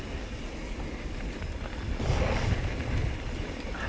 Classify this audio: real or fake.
real